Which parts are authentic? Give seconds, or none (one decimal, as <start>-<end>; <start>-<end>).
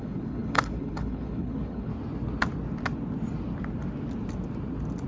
1.9-5.1